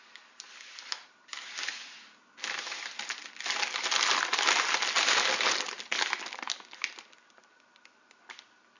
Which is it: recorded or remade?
recorded